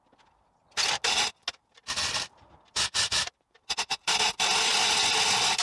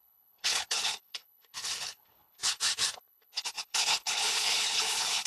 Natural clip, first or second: first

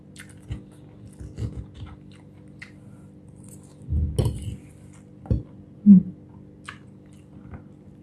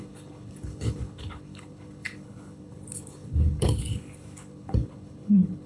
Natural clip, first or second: first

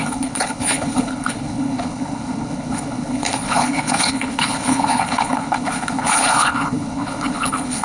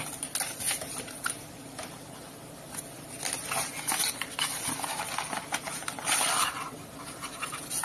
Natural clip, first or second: second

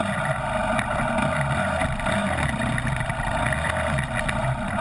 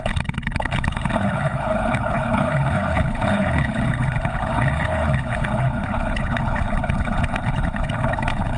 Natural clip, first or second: first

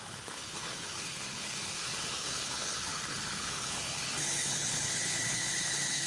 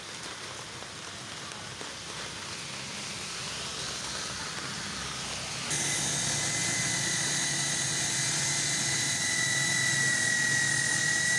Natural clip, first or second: second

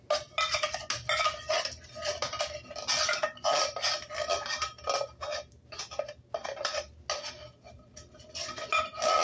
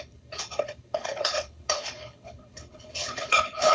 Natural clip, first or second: first